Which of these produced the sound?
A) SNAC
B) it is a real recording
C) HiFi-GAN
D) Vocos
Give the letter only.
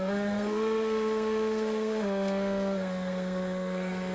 A